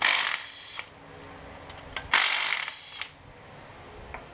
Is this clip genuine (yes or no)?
yes